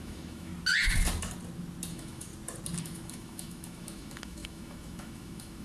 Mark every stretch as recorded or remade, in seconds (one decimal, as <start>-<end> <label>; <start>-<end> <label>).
0.0-0.5 remade; 0.5-1.9 recorded; 1.9-2.3 remade; 2.3-2.8 recorded; 2.8-5.6 remade